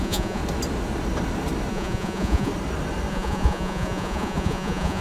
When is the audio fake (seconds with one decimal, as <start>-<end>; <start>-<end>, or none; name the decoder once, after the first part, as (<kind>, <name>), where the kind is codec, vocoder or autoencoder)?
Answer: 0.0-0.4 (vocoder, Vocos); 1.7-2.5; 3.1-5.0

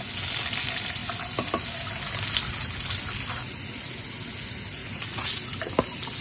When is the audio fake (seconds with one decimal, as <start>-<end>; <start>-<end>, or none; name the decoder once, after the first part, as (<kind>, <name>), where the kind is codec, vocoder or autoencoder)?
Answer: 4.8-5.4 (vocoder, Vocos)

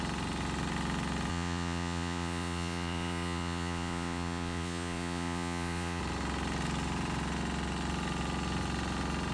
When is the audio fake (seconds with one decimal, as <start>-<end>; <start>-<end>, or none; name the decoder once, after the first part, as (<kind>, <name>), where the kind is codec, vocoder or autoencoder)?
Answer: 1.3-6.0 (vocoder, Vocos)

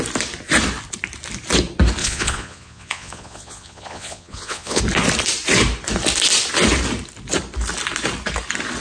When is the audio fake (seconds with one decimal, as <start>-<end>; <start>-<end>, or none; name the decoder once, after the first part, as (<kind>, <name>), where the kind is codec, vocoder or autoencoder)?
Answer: 2.0-4.8 (vocoder, Vocos)

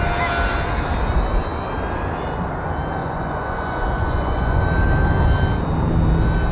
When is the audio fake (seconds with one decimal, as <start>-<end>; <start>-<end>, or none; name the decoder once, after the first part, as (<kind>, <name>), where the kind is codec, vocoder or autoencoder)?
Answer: 3.0-4.6 (vocoder, Vocos)